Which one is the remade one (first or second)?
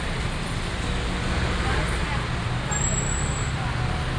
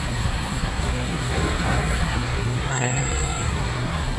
second